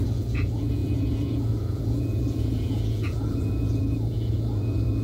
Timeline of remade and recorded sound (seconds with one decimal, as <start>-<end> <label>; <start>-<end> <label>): 0.0-5.0 remade